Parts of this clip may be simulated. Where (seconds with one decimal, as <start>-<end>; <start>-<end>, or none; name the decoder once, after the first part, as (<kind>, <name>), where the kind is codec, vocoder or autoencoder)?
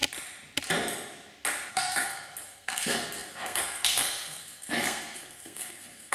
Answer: 1.7-6.1 (codec, SNAC)